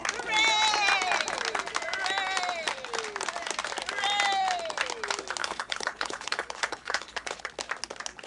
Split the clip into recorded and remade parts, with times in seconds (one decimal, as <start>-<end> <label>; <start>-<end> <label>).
0.0-5.4 recorded; 5.4-7.5 remade; 7.5-8.3 recorded